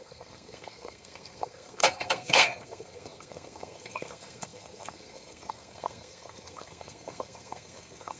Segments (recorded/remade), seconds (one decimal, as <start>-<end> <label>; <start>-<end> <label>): 0.0-8.2 remade